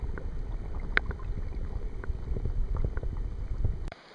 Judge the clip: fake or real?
real